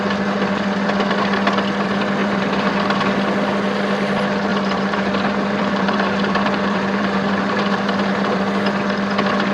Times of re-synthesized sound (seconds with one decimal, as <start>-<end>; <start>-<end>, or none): 2.2-2.7; 4.5-8.5